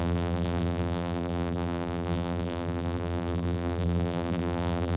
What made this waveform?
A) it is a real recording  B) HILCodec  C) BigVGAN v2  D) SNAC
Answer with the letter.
C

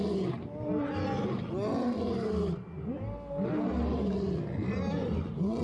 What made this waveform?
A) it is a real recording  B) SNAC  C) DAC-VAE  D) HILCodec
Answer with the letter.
A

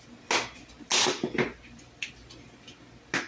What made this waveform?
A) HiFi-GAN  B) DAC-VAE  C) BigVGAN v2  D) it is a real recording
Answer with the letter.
D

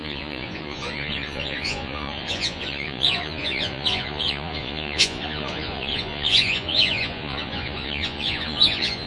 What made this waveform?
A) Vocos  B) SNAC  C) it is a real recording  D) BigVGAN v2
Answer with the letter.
A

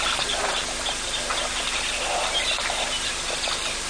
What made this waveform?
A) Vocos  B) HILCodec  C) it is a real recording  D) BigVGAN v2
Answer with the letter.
C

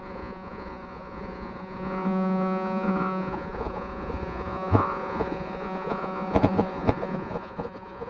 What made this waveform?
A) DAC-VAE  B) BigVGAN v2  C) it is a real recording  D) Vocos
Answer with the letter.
D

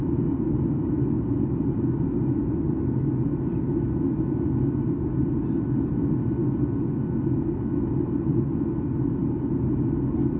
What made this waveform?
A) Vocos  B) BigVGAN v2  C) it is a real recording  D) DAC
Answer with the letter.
C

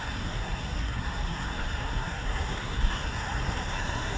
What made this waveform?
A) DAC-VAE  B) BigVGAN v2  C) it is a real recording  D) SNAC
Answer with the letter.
D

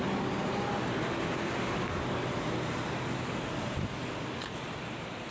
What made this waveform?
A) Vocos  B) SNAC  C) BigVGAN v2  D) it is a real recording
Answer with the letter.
D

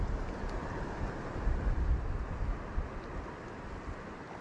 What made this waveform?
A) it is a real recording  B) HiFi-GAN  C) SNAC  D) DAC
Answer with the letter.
A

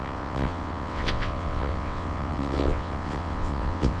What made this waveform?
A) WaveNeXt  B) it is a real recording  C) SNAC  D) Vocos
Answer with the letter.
A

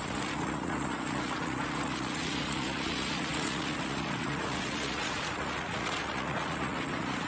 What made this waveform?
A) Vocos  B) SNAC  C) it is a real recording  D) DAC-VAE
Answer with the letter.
A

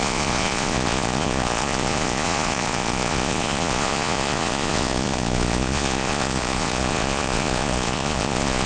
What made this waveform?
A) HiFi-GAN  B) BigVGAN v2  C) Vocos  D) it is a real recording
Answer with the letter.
C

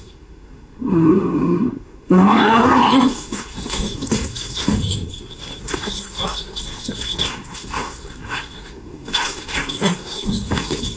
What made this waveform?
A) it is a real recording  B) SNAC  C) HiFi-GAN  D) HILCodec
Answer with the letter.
B